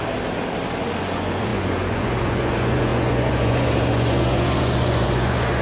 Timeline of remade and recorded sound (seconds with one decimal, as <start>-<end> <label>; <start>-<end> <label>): 0.0-1.0 recorded; 1.0-5.6 remade